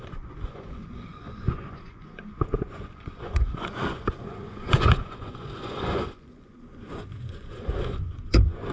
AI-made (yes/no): yes